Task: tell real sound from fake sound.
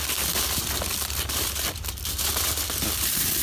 real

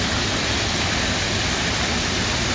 real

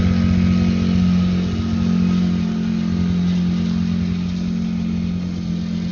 real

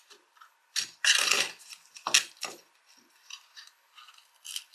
real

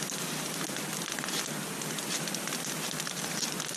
real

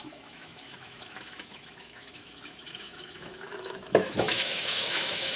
fake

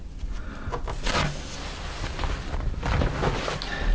real